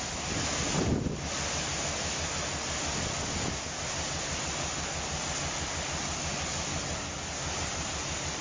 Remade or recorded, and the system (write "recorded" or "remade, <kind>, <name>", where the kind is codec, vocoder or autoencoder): recorded